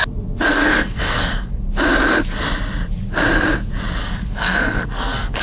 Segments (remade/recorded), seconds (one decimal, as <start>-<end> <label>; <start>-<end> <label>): 0.0-0.5 recorded; 0.5-1.6 remade; 1.6-4.0 recorded; 4.0-5.4 remade